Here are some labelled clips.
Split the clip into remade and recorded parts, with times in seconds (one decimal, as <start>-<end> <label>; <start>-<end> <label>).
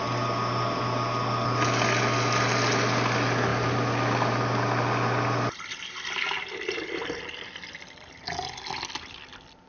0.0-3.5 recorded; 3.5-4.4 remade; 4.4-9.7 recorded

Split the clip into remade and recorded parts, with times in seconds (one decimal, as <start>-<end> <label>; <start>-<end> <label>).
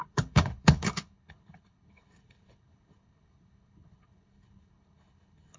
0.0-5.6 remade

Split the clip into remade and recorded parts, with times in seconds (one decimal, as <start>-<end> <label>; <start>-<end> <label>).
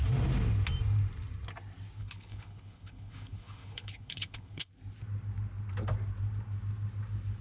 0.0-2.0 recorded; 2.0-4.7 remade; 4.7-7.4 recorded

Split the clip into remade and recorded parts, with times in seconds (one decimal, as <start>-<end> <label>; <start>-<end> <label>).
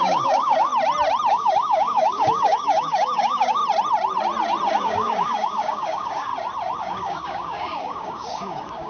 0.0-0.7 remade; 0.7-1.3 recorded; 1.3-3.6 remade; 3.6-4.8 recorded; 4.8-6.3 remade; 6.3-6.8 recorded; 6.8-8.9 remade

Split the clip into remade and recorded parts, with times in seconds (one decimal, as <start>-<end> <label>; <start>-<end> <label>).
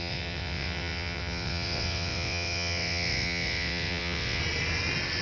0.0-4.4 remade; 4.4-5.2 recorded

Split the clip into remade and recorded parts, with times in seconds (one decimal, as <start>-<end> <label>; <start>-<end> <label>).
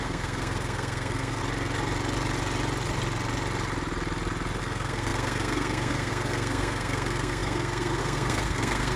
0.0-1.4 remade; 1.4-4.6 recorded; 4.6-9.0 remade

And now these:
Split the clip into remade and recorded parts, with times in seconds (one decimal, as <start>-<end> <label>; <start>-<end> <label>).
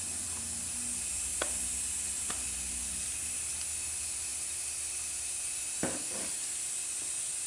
0.0-7.5 recorded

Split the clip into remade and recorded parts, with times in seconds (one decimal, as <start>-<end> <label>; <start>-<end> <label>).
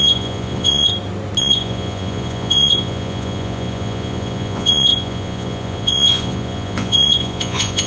0.0-0.9 remade; 0.9-1.4 recorded; 1.4-7.9 remade